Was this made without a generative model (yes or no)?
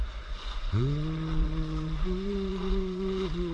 no